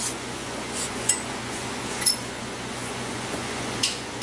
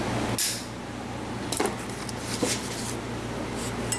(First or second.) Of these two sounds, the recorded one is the second